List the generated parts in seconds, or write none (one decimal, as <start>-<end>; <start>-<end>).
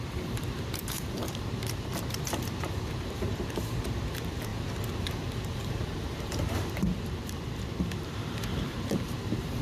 0.0-9.6